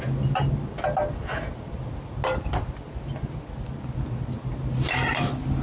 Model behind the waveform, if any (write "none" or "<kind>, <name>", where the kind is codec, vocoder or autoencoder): none